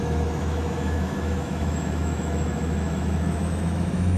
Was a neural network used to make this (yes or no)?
yes